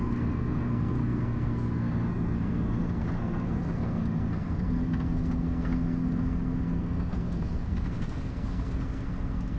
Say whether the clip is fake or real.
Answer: fake